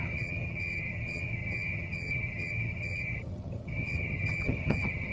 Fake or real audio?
fake